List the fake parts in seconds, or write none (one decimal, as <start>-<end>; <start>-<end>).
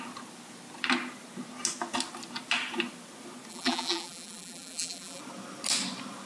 3.5-5.2